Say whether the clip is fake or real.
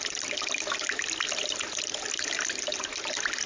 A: real